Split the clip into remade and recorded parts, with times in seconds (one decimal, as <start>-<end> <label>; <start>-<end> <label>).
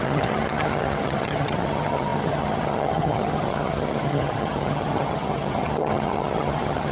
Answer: 0.0-6.9 remade